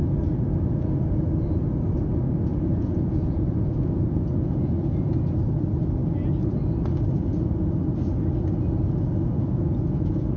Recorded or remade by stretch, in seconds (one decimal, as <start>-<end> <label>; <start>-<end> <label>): 0.0-2.5 recorded; 2.5-5.2 remade; 5.2-9.4 recorded; 9.4-10.4 remade